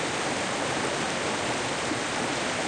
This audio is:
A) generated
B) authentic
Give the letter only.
B